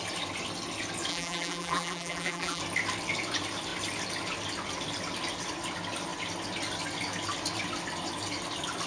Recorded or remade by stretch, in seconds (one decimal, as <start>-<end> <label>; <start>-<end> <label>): 0.0-1.1 recorded; 1.1-2.6 remade; 2.6-8.9 recorded